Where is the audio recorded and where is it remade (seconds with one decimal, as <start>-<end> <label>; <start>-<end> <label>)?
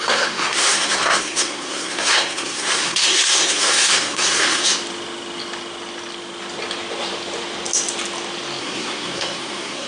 0.0-4.8 remade; 4.8-8.6 recorded; 8.6-9.9 remade